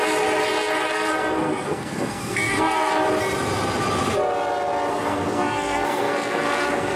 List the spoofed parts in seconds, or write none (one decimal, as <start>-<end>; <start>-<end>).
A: 0.9-2.9; 4.9-7.0